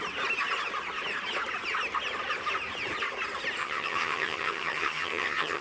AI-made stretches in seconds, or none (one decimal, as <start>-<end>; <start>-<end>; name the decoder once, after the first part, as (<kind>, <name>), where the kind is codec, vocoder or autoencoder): 3.6-5.6 (vocoder, HiFi-GAN)